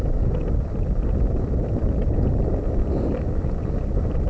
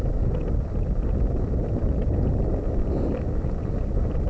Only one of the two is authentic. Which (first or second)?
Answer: second